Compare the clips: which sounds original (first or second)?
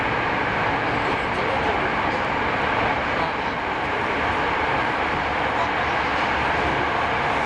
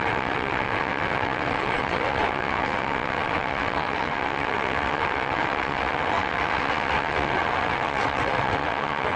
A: first